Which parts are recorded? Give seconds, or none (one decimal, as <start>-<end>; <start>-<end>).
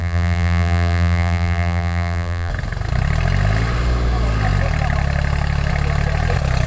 2.5-6.7